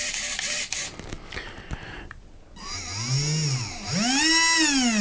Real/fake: real